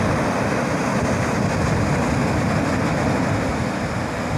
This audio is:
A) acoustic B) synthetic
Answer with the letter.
A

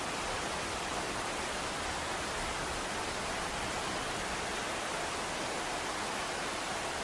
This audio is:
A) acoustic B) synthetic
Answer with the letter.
B